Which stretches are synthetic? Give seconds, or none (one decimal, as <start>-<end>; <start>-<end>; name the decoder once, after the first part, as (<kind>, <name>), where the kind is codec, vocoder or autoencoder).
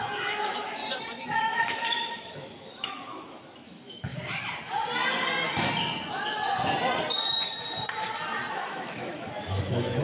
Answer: 0.0-0.8 (autoencoder, DAC-VAE); 1.4-4.1; 8.5-10.0